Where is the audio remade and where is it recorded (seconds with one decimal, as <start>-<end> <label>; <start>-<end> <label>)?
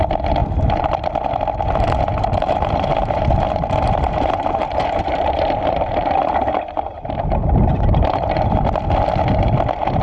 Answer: 0.0-2.1 recorded; 2.1-7.2 remade; 7.2-7.7 recorded; 7.7-8.7 remade; 8.7-10.0 recorded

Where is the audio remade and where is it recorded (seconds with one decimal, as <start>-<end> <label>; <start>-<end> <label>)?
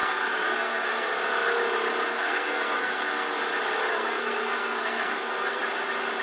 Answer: 0.0-1.1 remade; 1.1-2.1 recorded; 2.1-3.4 remade; 3.4-3.9 recorded; 3.9-5.6 remade; 5.6-6.2 recorded